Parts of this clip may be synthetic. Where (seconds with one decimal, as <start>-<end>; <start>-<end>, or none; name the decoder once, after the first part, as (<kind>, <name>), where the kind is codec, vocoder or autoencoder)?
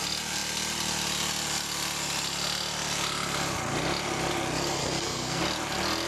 4.8-5.4 (codec, SNAC)